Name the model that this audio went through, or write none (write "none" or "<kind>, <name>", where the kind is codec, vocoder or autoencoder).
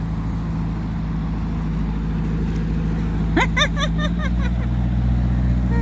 none